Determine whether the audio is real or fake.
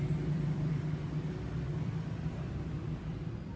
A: fake